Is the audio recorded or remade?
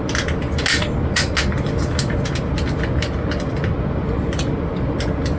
recorded